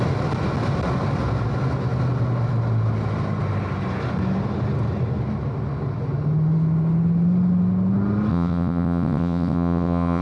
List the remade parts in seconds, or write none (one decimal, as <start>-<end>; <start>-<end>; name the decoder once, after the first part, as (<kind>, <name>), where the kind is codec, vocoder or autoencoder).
8.3-10.2 (vocoder, WaveNeXt)